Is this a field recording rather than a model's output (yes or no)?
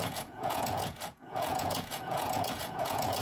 no